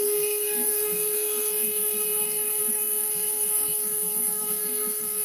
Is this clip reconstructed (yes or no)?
yes